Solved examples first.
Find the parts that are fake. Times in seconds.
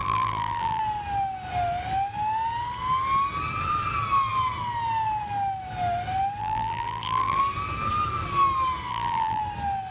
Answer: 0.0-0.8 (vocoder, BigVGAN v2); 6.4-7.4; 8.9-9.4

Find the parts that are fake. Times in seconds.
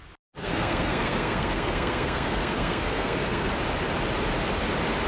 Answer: 0.4-3.5 (codec, SNAC)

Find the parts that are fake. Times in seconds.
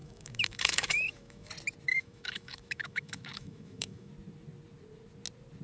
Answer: 0.0-1.5 (autoencoder, DAC-VAE); 1.9-4.1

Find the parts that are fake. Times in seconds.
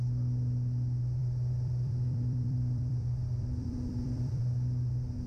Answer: 1.2-4.4 (vocoder, BigVGAN v2)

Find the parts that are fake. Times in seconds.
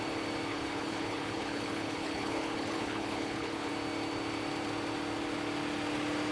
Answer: 0.5-3.7 (codec, HILCodec)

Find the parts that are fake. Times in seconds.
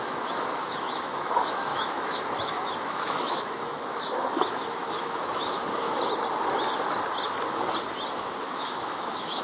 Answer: 0.0-5.6 (autoencoder, DAC-VAE); 8.4-9.4